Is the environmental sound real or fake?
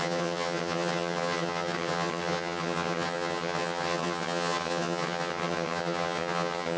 fake